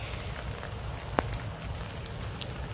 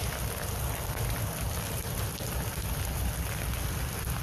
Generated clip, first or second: second